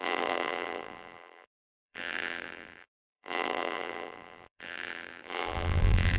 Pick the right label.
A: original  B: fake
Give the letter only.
B